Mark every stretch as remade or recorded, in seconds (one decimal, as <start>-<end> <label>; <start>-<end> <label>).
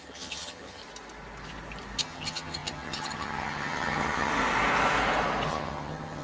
0.0-0.8 remade; 0.8-2.0 recorded; 2.0-4.3 remade; 4.3-5.5 recorded; 5.5-6.2 remade